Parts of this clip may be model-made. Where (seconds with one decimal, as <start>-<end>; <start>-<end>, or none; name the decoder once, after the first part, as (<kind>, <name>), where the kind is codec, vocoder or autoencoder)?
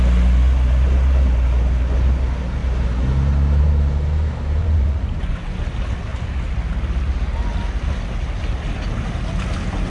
4.6-5.6 (vocoder, Vocos)